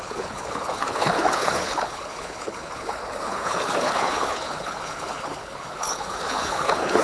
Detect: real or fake fake